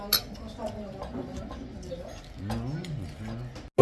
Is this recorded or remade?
recorded